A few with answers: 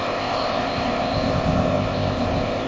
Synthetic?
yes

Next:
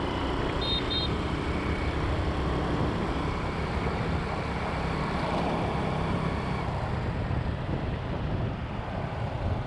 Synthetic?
yes